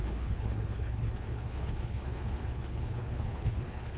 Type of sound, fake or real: fake